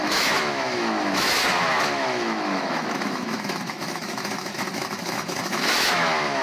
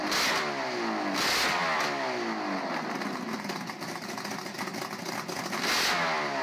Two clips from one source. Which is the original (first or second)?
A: second